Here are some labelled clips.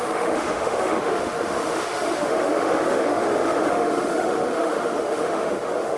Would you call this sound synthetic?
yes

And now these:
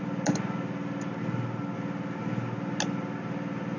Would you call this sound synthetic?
no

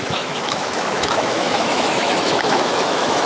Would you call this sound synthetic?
yes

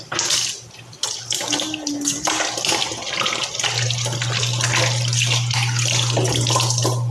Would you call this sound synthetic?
no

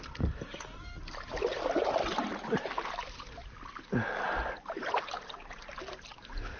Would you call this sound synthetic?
no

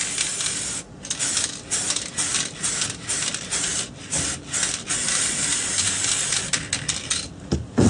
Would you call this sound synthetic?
no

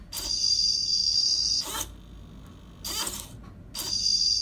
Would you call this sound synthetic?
no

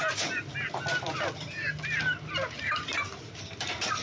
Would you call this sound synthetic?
no